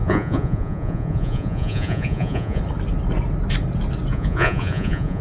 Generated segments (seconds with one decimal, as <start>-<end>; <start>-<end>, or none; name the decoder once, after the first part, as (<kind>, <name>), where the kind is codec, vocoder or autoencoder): 0.0-2.6 (vocoder, Vocos); 4.1-5.2